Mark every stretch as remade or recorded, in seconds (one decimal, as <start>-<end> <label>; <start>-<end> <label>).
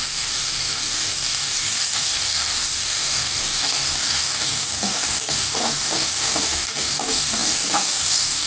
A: 0.0-8.5 remade